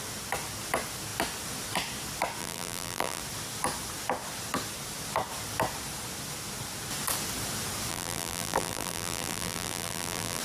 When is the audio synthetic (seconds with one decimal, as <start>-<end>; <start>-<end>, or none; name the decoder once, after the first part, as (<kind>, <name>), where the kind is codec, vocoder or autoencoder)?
2.4-3.2 (vocoder, BigVGAN v2); 7.9-10.4